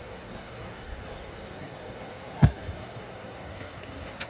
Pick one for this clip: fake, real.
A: fake